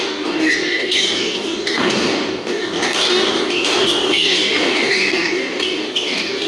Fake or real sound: fake